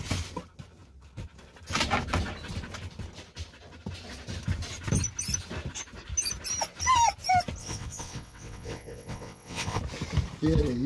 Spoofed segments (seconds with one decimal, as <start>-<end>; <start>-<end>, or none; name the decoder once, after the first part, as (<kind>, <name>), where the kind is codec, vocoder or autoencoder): 7.6-9.8 (vocoder, WaveNeXt)